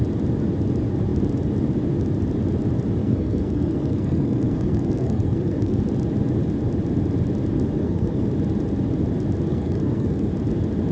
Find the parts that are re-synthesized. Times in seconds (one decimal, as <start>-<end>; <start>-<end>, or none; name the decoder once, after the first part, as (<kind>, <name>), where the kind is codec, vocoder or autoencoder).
3.0-5.8 (codec, SNAC); 7.8-8.3; 9.5-10.3